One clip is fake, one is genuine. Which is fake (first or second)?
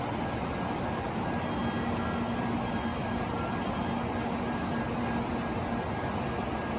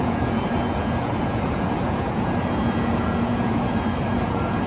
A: second